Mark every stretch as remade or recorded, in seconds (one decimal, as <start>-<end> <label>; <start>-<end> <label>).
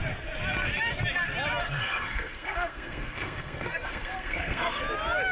0.0-1.6 recorded; 1.6-4.8 remade; 4.8-5.3 recorded